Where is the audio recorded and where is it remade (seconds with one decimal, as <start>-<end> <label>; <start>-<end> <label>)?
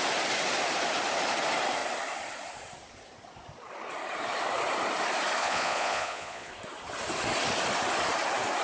0.0-5.4 recorded; 5.4-6.5 remade; 6.5-8.6 recorded